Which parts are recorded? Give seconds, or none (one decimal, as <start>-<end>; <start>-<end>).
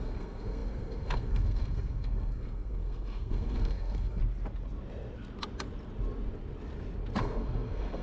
4.2-7.2